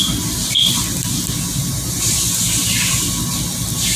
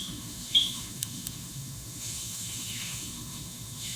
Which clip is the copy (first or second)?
second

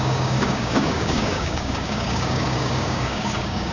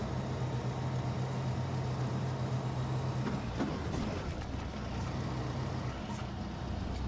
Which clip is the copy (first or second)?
first